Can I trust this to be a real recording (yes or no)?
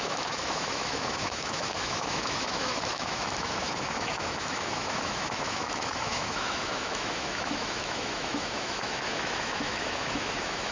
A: no